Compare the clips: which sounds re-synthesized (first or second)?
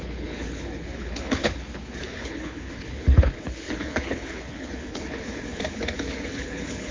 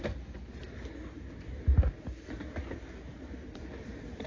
first